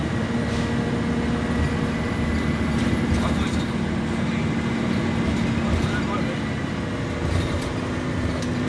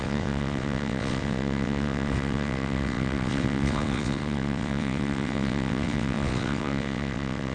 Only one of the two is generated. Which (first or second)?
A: second